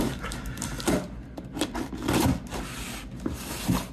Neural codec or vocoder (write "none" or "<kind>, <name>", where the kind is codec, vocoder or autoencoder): none